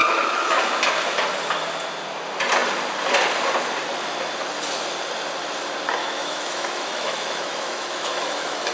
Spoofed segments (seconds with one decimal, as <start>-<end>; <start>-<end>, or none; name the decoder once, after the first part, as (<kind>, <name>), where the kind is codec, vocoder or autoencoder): 0.0-0.6 (autoencoder, DAC-VAE); 6.0-8.7